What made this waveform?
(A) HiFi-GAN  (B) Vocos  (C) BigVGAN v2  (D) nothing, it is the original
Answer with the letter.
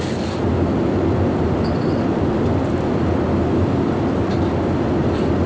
D